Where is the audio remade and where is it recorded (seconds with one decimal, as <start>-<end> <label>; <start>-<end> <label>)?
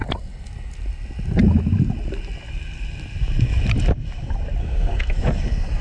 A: 0.0-4.6 recorded; 4.6-5.2 remade; 5.2-5.8 recorded